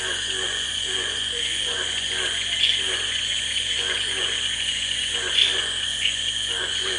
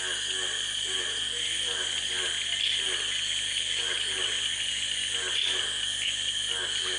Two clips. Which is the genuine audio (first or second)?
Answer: second